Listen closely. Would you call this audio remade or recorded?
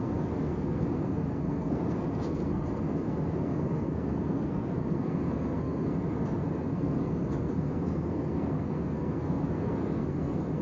remade